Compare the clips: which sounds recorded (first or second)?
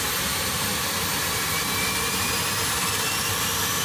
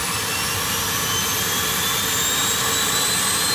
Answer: second